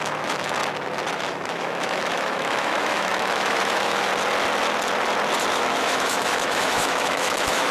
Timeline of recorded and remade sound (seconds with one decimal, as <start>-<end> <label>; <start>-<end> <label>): 0.0-0.6 remade; 0.6-1.1 recorded; 1.1-4.1 remade; 4.1-5.5 recorded; 5.5-7.7 remade